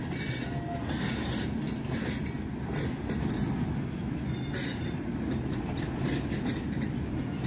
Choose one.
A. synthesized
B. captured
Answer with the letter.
B